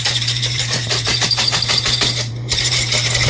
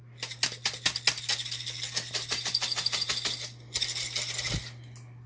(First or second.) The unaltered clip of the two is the second